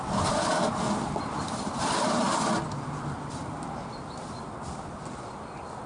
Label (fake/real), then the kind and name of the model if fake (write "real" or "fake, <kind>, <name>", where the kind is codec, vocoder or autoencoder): fake, vocoder, BigVGAN v2